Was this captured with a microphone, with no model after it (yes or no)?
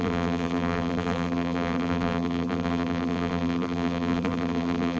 no